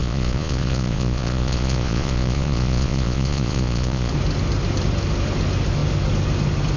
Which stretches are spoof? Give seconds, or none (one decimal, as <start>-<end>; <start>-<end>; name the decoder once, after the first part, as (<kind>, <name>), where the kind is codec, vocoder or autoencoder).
0.0-4.1 (vocoder, Vocos)